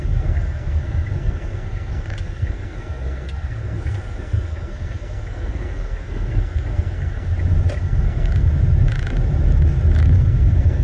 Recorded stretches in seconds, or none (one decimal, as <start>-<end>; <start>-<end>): 7.3-7.8; 8.5-10.0